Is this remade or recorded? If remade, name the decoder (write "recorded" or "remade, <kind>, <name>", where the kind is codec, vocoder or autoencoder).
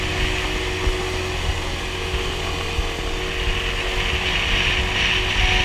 recorded